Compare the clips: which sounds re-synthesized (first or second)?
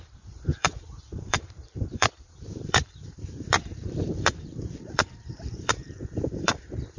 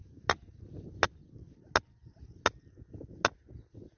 first